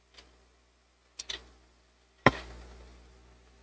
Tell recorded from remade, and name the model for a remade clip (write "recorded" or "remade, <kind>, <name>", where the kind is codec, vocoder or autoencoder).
recorded